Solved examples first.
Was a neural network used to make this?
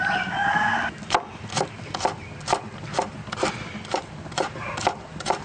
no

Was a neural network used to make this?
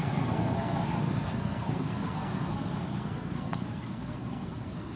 yes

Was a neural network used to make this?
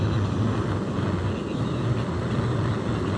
no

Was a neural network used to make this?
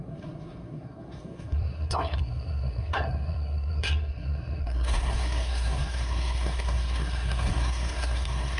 yes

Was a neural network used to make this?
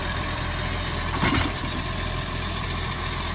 yes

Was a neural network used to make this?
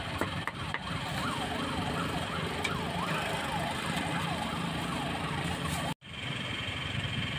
no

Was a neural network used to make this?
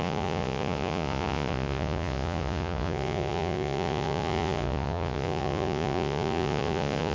yes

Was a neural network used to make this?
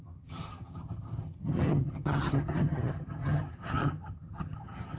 yes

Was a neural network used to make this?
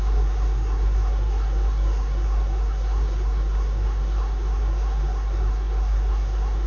yes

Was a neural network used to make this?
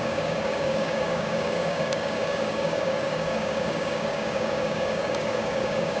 yes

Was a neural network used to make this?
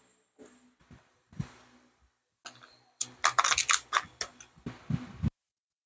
no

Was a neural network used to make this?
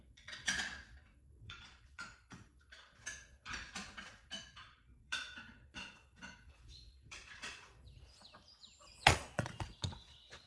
yes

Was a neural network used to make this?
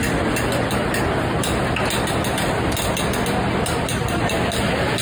no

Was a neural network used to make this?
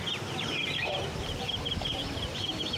yes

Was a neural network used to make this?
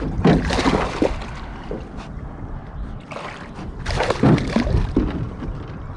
no